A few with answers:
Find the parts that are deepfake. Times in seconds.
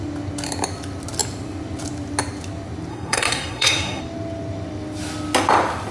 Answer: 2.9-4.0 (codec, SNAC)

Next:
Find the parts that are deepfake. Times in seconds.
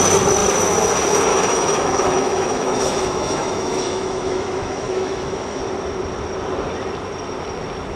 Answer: 1.3-5.6 (autoencoder, DAC-VAE)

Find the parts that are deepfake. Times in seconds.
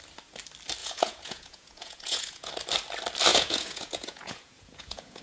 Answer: 0.8-2.5 (vocoder, Vocos); 3.3-5.2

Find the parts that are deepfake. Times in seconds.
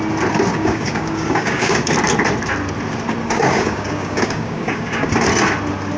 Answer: 0.5-1.9 (codec, DAC); 3.2-5.1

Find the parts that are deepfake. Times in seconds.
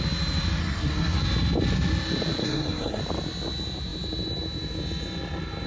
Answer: 0.6-1.2 (codec, SNAC); 2.4-3.0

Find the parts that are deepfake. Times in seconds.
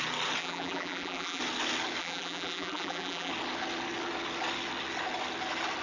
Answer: 0.4-1.4 (vocoder, BigVGAN v2); 2.0-3.3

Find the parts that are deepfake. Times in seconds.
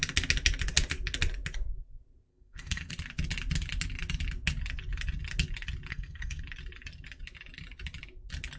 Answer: 2.3-2.9 (codec, SNAC); 5.9-6.4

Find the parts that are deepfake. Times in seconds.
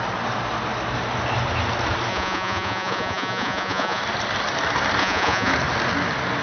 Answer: 2.1-4.0 (vocoder, Vocos); 5.0-5.5